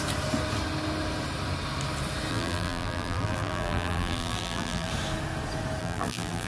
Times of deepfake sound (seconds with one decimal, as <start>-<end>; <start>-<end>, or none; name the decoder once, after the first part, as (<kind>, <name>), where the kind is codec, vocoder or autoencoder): 2.3-4.9 (vocoder, BigVGAN v2); 5.8-6.5